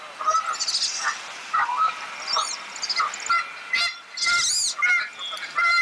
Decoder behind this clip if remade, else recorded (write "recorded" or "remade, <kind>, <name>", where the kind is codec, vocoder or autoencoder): recorded